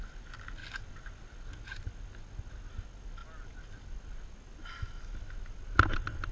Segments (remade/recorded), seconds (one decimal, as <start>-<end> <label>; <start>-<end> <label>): 0.0-6.3 recorded